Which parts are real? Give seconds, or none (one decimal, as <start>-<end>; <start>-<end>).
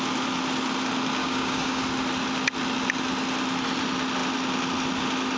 0.0-1.2; 1.8-5.4